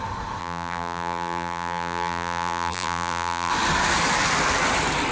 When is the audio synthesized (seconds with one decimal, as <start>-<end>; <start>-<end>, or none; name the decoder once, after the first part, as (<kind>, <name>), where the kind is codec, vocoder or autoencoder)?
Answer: 0.4-3.5 (vocoder, BigVGAN v2)